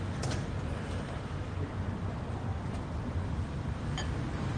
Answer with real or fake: fake